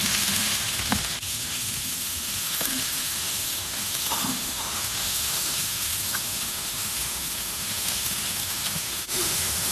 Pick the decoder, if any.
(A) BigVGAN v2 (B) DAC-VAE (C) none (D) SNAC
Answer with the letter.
B